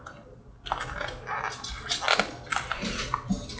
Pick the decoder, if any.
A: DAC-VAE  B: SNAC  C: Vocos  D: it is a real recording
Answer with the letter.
D